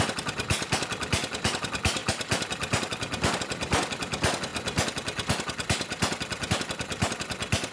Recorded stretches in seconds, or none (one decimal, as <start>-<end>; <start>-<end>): 0.0-7.7